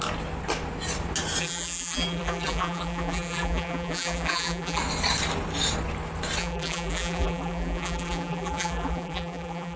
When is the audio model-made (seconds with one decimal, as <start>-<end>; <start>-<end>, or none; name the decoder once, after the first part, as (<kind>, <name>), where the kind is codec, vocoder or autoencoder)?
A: 1.4-4.8 (vocoder, BigVGAN v2); 6.4-9.8